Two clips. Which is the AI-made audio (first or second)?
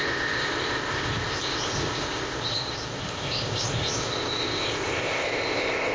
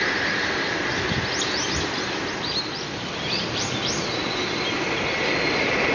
first